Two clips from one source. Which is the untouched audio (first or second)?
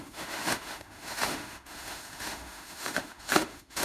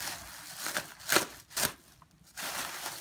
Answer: second